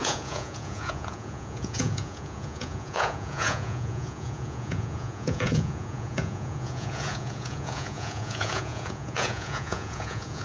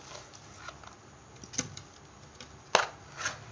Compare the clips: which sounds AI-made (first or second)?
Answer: first